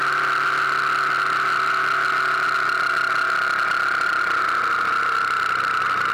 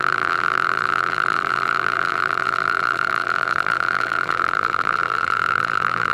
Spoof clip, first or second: second